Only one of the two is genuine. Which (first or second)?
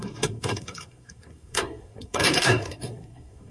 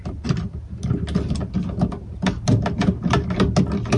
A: second